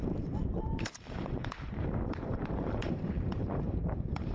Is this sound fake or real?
fake